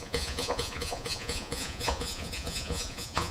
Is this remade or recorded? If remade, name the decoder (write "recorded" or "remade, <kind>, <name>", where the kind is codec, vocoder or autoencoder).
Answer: remade, vocoder, Vocos